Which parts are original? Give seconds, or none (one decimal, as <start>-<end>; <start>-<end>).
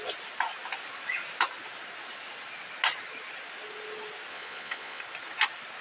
0.0-4.3; 5.0-5.8